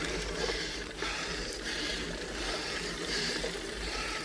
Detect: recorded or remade remade